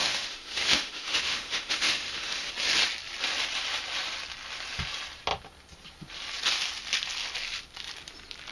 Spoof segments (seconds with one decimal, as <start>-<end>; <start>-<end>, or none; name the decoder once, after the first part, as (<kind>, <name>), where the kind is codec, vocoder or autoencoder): 0.0-2.5 (autoencoder, DAC-VAE)